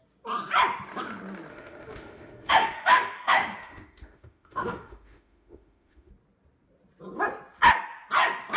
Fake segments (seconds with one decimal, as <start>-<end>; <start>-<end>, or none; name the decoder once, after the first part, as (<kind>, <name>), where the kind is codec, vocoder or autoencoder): 1.5-6.1 (autoencoder, DAC-VAE)